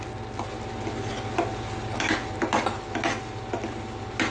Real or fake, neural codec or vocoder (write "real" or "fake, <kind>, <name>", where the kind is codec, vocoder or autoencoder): real